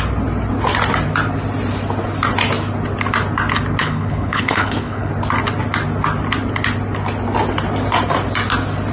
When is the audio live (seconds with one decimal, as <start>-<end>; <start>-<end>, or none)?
0.0-3.8; 5.1-8.9